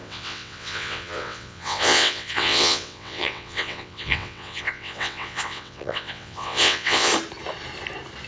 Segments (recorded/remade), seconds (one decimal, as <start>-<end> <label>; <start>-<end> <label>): 0.0-7.1 remade; 7.1-8.3 recorded